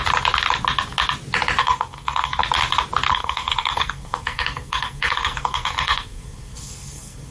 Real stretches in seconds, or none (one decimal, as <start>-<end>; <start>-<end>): 0.0-1.6; 2.4-3.1